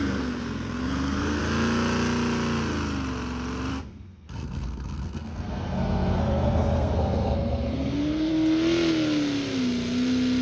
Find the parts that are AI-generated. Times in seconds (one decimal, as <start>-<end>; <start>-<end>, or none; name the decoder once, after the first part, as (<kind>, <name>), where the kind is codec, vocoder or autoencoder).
0.0-1.4 (codec, SNAC); 3.7-8.3